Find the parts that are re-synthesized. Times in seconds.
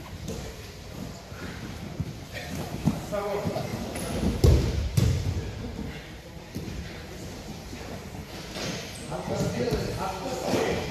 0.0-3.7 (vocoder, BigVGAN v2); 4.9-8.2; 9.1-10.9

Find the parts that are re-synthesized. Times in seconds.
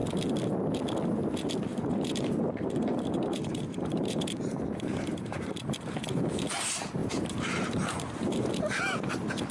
1.7-5.5 (vocoder, BigVGAN v2); 7.0-8.5